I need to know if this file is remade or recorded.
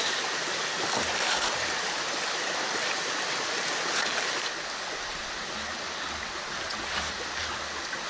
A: recorded